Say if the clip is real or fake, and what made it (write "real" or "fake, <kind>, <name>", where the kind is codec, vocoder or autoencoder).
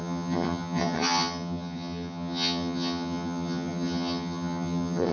fake, vocoder, HiFi-GAN